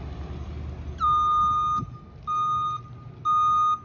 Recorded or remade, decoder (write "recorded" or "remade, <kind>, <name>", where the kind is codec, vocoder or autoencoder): recorded